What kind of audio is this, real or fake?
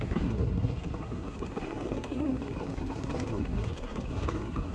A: fake